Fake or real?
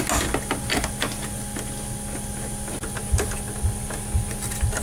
real